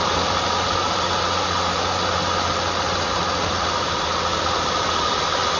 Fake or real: real